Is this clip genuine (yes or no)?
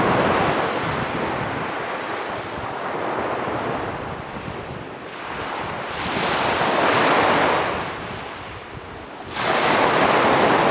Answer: yes